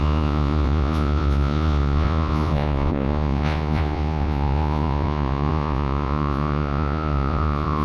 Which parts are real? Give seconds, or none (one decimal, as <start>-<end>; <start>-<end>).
none